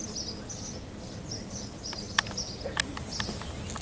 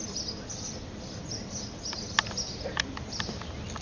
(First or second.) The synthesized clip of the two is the second